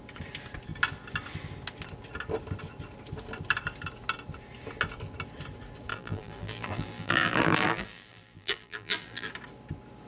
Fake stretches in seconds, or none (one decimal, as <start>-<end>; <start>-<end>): 5.9-9.3